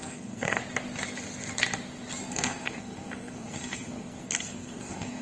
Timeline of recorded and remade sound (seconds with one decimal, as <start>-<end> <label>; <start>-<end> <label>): 0.0-0.6 remade; 0.6-2.3 recorded; 2.3-5.2 remade